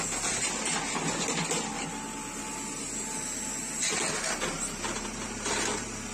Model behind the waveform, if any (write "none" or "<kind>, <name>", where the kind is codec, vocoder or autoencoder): none